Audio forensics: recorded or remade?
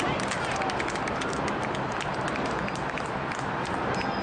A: recorded